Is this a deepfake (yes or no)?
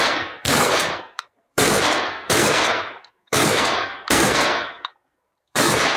yes